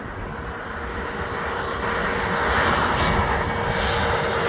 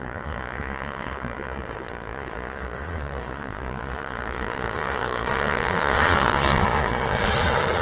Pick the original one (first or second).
first